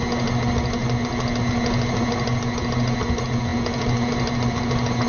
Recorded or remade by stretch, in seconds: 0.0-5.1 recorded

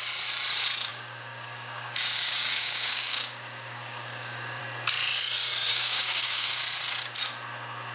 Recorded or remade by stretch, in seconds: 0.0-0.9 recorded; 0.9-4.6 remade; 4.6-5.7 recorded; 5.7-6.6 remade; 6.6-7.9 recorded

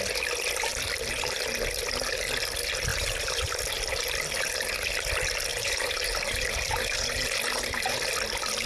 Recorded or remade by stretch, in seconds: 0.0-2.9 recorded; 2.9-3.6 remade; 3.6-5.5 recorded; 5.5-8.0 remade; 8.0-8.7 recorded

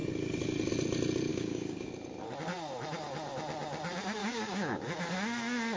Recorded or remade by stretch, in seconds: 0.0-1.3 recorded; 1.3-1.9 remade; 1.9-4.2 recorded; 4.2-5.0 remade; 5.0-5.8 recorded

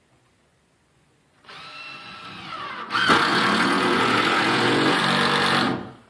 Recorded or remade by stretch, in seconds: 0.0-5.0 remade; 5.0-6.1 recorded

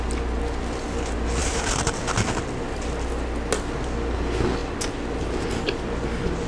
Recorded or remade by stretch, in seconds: 0.0-1.4 recorded; 1.4-2.0 remade; 2.0-6.5 recorded

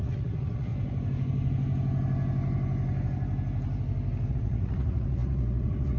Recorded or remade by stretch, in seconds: 0.0-0.7 remade; 0.7-4.3 recorded; 4.3-6.0 remade